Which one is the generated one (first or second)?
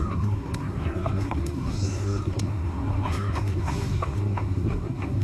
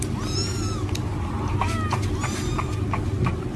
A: first